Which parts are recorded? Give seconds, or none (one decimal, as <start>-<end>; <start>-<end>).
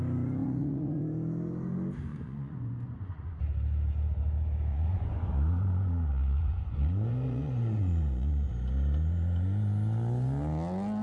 0.0-0.4; 1.0-2.1; 3.4-4.7; 8.5-11.0